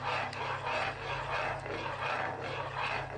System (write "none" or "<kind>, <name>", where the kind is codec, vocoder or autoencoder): none